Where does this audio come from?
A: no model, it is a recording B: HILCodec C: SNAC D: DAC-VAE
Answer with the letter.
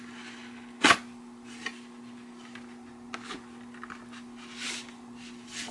A